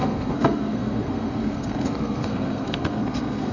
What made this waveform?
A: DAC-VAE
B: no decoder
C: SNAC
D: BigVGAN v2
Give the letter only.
C